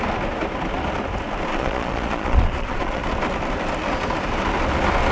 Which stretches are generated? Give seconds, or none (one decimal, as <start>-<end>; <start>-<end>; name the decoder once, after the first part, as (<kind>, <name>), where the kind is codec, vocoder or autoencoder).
1.5-3.0 (vocoder, Vocos)